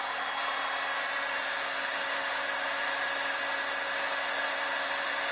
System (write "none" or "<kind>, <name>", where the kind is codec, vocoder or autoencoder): none